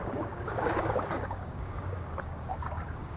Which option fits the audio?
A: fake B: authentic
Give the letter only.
A